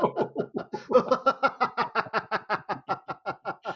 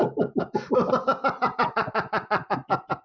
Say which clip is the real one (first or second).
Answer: first